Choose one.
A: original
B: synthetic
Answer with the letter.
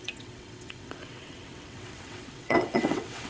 B